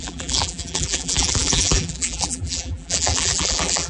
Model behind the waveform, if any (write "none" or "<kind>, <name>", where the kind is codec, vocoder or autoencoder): vocoder, BigVGAN v2